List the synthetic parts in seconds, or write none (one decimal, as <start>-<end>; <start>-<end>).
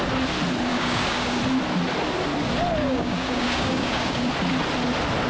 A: 0.7-1.4; 2.8-4.3